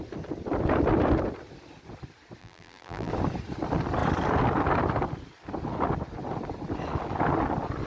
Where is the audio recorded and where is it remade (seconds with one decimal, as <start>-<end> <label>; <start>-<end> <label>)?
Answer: 0.0-2.4 recorded; 2.4-3.1 remade; 3.1-7.9 recorded